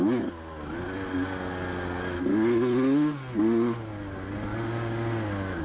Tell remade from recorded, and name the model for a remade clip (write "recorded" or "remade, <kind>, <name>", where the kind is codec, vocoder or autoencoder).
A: recorded